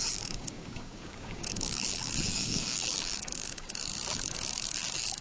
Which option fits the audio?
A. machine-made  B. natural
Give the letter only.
A